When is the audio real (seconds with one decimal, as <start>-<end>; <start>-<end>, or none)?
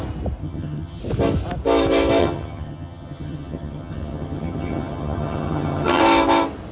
0.0-0.4; 1.0-2.2; 6.0-6.7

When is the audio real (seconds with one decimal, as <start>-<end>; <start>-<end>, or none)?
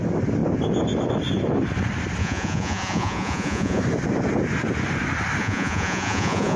0.0-2.2; 3.8-5.4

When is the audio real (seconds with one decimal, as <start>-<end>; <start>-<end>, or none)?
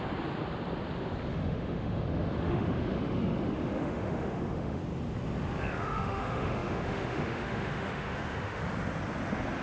0.0-1.3; 4.8-5.7; 8.6-9.6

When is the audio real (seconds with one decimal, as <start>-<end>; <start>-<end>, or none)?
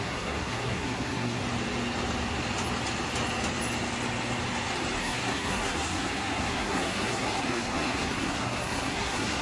1.4-5.0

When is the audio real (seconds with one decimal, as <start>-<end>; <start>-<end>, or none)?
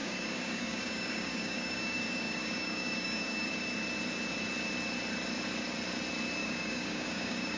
3.6-6.4